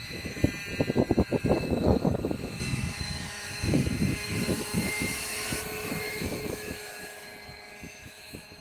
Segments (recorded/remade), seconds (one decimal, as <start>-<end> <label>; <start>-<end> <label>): 0.0-0.4 remade; 0.4-1.1 recorded; 1.1-7.3 remade; 7.3-7.9 recorded; 7.9-8.6 remade